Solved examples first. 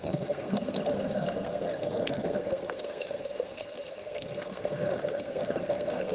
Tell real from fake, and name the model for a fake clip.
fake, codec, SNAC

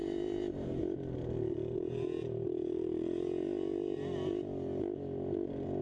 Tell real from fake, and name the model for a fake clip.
real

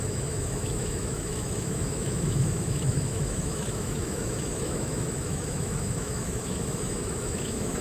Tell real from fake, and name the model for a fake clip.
fake, autoencoder, DAC-VAE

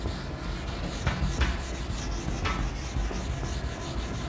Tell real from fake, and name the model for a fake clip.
real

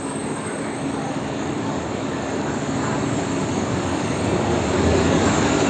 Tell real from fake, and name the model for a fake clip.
fake, codec, DAC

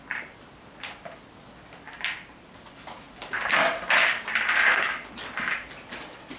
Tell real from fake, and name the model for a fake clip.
real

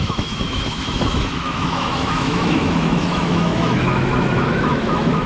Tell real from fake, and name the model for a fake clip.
fake, autoencoder, DAC-VAE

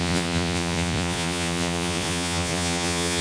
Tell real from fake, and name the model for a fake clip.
fake, vocoder, Vocos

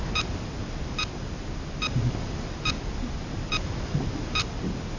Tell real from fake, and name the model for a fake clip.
real